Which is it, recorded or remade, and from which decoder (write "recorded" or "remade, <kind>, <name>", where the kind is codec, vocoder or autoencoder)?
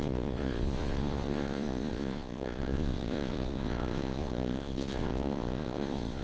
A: remade, vocoder, Vocos